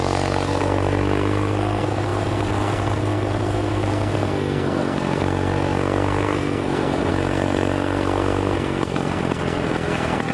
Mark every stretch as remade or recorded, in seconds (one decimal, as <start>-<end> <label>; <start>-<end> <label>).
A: 0.0-10.3 remade